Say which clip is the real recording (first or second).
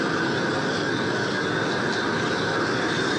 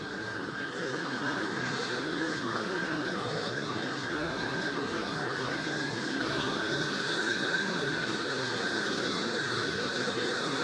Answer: first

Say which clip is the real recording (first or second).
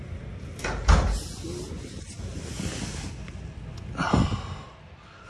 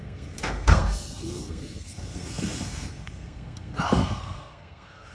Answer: first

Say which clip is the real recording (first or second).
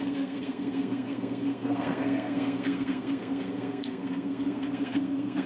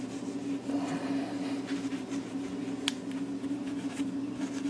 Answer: second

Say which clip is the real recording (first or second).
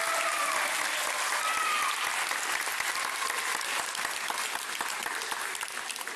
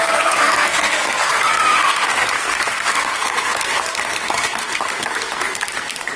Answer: first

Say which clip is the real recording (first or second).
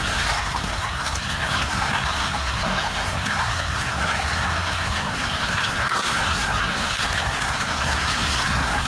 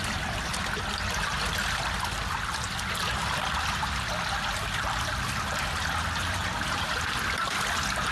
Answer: second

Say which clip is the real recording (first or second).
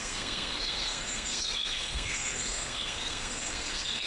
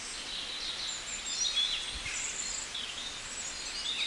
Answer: second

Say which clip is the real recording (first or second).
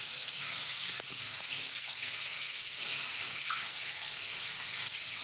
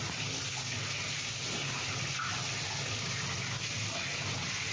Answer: second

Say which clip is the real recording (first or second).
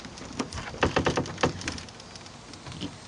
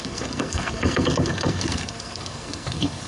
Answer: first